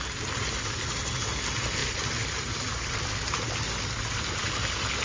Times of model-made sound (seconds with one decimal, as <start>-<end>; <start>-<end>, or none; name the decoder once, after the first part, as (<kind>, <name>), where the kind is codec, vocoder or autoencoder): none

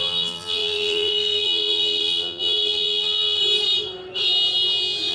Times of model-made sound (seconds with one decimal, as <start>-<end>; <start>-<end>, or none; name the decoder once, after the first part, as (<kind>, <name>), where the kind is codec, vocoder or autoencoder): 0.0-3.4 (vocoder, BigVGAN v2)